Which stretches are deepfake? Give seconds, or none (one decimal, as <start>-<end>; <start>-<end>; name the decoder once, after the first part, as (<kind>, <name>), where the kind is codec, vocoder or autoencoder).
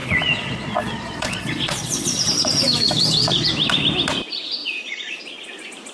0.0-3.5 (vocoder, Vocos); 4.6-5.2